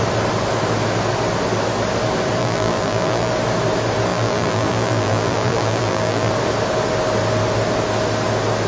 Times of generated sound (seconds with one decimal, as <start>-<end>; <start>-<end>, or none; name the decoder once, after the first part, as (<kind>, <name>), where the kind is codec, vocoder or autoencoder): 2.4-3.3 (vocoder, BigVGAN v2); 4.1-6.3